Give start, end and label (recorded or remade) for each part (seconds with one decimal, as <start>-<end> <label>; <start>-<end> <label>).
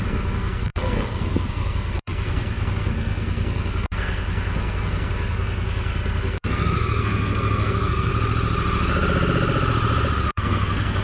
0.0-8.1 remade; 8.1-10.3 recorded; 10.3-11.0 remade